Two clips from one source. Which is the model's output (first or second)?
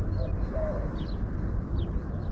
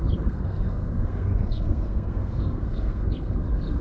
second